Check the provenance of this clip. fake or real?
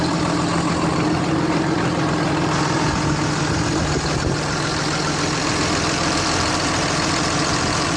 real